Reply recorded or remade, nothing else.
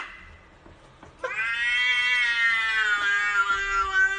recorded